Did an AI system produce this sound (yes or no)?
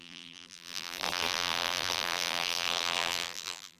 yes